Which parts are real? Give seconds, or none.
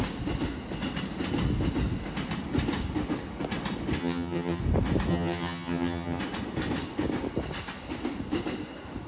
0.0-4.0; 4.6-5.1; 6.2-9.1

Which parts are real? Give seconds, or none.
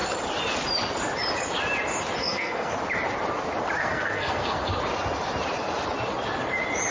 0.0-2.2; 2.7-3.8; 4.7-6.9